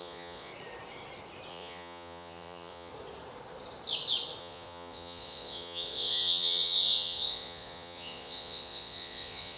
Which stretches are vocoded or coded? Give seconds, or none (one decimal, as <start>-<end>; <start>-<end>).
0.0-0.5; 1.5-2.9; 4.4-9.6